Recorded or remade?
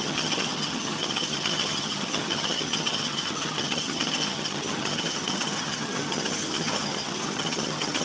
remade